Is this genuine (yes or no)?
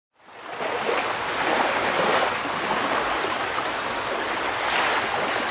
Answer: yes